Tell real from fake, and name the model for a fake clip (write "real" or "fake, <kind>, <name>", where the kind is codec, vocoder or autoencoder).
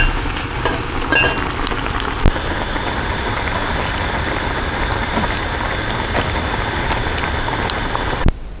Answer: real